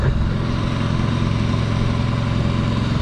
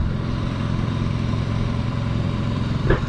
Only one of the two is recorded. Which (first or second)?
first